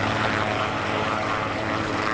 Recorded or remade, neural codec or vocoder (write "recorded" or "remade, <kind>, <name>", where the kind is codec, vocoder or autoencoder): remade, vocoder, BigVGAN v2